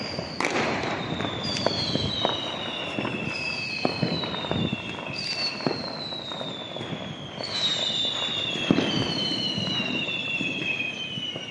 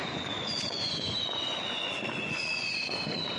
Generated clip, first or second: second